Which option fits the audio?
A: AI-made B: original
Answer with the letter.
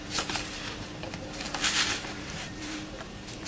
A